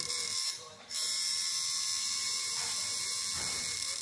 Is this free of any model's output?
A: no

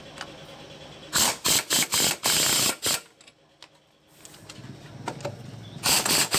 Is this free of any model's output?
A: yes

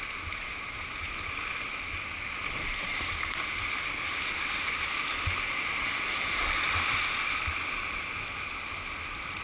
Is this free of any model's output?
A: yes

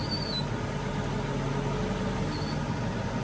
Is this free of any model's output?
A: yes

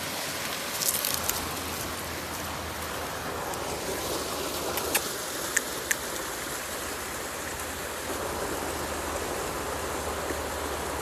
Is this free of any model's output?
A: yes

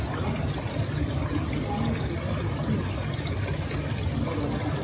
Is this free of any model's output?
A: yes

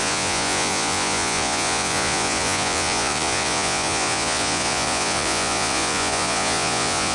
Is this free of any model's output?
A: no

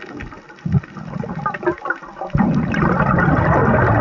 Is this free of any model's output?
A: yes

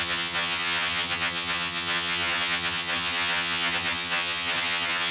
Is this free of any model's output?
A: no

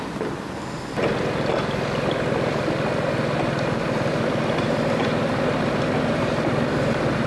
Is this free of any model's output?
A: yes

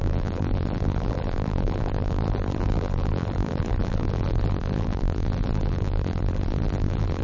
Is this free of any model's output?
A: no